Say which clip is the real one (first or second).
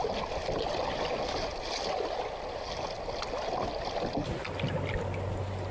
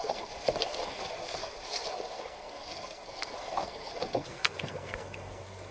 first